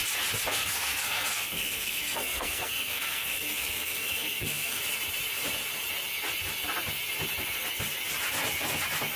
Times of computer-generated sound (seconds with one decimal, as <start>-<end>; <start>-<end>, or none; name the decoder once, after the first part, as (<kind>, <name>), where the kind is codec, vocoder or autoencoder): 0.5-4.8 (codec, SNAC)

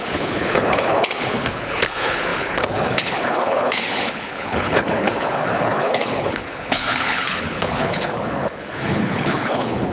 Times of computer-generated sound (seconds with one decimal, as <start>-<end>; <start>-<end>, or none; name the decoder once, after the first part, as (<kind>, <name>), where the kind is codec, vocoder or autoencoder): 0.0-9.9 (codec, HILCodec)

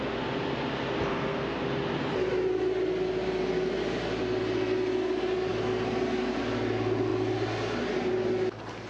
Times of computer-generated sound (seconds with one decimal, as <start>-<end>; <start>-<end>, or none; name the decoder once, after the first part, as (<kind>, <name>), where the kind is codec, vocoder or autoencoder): 1.1-1.6 (codec, SNAC)

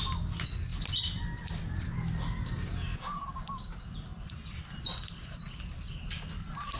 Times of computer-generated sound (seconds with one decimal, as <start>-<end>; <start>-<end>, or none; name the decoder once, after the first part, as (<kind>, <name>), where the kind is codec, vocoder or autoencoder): 0.7-1.8 (vocoder, BigVGAN v2); 4.1-6.2

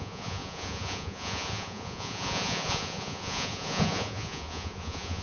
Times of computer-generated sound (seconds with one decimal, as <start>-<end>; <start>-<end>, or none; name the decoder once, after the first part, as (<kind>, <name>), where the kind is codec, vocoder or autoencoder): 0.0-5.2 (vocoder, Vocos)